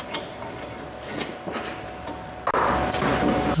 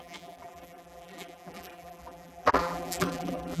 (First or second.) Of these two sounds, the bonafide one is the first